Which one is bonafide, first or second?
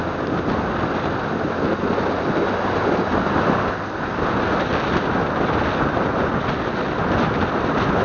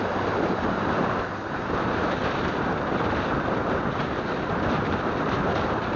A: first